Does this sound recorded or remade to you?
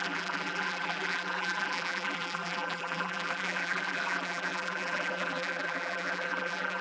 remade